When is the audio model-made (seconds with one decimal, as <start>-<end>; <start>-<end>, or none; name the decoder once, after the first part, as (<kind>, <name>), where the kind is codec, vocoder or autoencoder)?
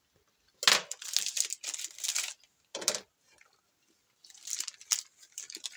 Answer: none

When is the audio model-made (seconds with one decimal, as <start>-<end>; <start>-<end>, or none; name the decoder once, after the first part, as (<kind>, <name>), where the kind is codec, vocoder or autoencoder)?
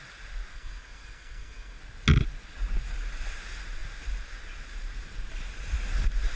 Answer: 0.5-1.8 (codec, SNAC)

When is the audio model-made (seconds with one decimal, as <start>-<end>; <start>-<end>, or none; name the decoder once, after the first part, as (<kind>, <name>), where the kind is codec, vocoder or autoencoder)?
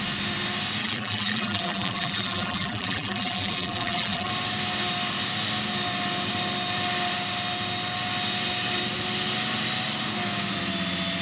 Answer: 0.8-4.3 (vocoder, BigVGAN v2)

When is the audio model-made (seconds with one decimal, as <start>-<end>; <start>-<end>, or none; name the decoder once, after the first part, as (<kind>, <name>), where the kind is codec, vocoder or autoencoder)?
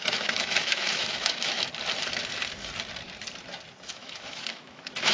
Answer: 0.0-1.7 (autoencoder, DAC-VAE); 3.9-5.1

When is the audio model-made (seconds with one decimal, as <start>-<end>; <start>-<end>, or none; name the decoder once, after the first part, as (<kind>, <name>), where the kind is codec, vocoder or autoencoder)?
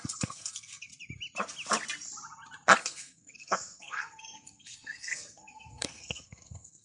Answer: 0.0-0.9 (codec, SNAC); 2.8-6.8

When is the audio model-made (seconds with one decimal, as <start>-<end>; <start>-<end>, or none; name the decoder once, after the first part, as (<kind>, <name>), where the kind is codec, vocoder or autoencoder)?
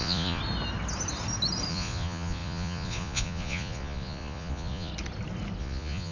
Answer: 0.0-0.4 (vocoder, Vocos); 1.7-4.9; 5.6-6.1